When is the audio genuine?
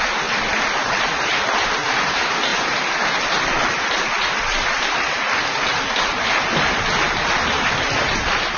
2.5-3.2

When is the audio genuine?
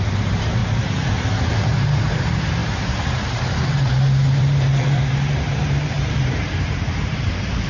0.6-1.4